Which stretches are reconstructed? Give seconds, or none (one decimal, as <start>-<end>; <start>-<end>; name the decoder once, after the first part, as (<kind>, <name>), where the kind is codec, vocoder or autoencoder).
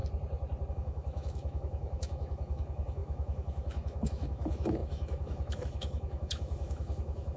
0.7-7.4 (autoencoder, DAC-VAE)